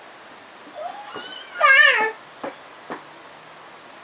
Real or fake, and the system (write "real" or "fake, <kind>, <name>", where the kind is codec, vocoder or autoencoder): real